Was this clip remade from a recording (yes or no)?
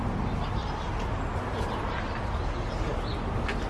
no